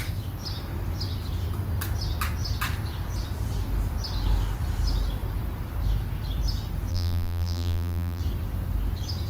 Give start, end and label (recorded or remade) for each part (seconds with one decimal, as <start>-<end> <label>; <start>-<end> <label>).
0.0-6.9 recorded; 6.9-8.2 remade; 8.2-9.3 recorded